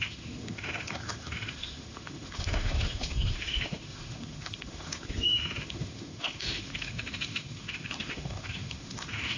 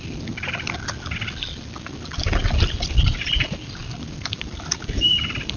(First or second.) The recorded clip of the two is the second